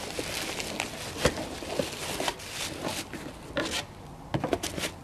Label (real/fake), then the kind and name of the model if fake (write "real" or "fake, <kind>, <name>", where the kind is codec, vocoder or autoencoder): real